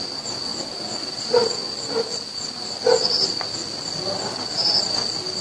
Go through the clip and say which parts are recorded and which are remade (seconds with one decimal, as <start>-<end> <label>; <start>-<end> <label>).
0.0-5.4 recorded